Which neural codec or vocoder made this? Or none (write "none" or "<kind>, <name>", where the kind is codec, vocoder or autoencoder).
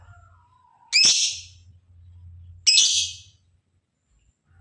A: none